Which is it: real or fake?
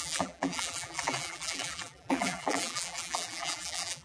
fake